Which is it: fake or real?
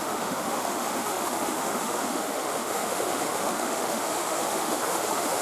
fake